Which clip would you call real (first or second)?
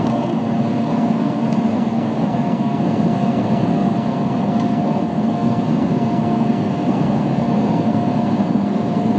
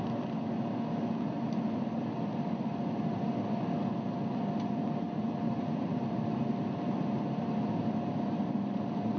second